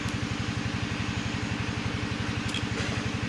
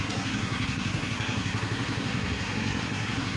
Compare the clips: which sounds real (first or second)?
first